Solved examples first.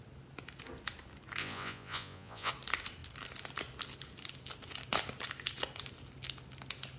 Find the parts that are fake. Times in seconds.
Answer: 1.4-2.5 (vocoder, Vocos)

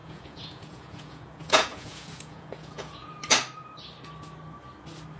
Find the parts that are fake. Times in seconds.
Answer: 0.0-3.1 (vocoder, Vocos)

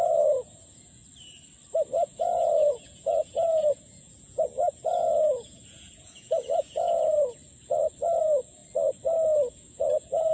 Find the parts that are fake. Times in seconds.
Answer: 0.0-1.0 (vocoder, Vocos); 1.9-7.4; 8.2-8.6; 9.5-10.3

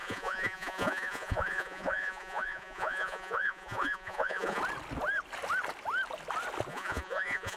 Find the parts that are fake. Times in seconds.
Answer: 0.0-4.6 (vocoder, Vocos); 6.7-7.6

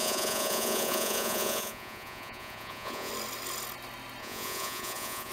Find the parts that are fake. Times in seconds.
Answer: 0.0-3.1 (vocoder, Vocos); 4.2-5.3

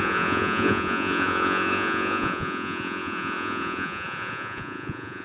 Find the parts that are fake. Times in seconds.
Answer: 0.0-5.2 (vocoder, Vocos)